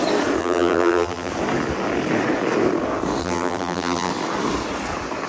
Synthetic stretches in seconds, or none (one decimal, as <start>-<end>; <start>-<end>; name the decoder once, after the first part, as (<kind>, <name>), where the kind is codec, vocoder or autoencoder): 0.4-1.3 (vocoder, BigVGAN v2); 3.2-4.1